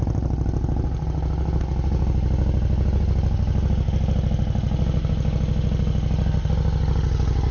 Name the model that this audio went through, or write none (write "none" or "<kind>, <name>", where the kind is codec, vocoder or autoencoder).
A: none